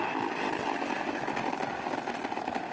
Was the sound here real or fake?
real